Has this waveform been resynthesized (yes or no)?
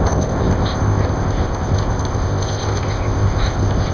yes